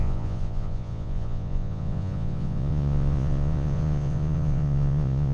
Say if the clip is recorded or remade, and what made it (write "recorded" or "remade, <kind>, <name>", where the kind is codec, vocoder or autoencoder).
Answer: remade, vocoder, Vocos